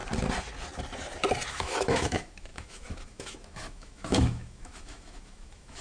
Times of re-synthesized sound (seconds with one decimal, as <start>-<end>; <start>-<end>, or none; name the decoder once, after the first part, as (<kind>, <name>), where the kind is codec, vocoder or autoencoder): 1.5-5.8 (autoencoder, DAC-VAE)

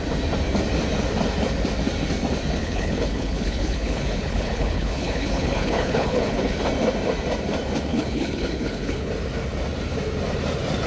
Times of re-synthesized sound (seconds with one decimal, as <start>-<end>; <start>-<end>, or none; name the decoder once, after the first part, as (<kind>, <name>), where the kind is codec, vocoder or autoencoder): 2.6-6.6 (codec, HILCodec); 7.9-9.1